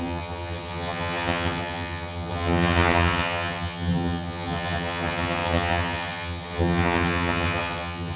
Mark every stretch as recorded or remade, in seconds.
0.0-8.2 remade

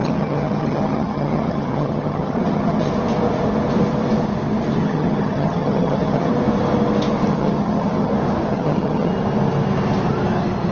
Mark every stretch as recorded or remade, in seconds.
0.0-2.9 remade; 2.9-4.8 recorded; 4.8-6.3 remade; 6.3-7.3 recorded; 7.3-8.1 remade; 8.1-8.5 recorded; 8.5-9.1 remade; 9.1-10.7 recorded

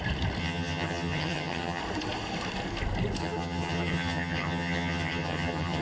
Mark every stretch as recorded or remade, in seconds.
0.0-0.4 recorded; 0.4-1.8 remade; 1.8-3.2 recorded; 3.2-5.8 remade

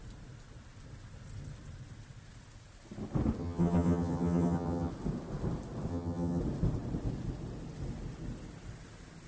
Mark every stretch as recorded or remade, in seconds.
0.0-3.4 recorded; 3.4-4.9 remade; 4.9-5.9 recorded; 5.9-6.4 remade; 6.4-9.3 recorded